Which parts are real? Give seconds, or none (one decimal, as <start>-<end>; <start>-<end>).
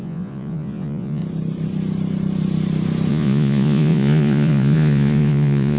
1.2-3.1